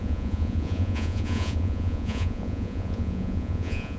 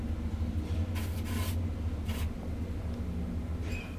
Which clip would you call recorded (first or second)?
second